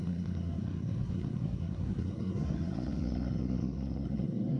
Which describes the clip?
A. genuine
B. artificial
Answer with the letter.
B